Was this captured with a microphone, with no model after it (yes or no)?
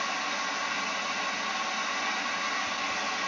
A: yes